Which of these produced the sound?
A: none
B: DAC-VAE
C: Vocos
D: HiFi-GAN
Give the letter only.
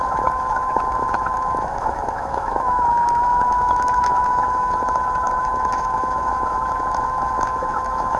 B